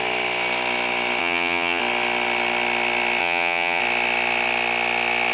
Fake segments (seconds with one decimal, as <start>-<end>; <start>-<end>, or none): 1.2-1.8; 3.2-3.8